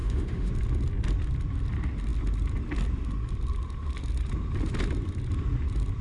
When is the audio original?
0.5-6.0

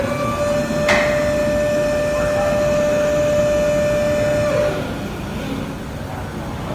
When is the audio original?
0.0-1.4; 3.4-6.7

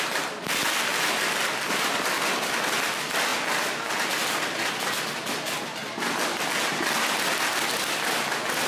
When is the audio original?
0.0-8.7

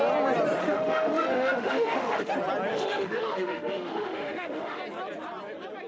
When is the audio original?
0.0-0.6; 2.3-2.7; 4.8-5.9